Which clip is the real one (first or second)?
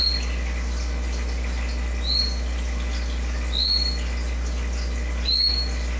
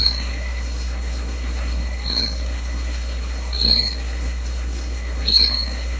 first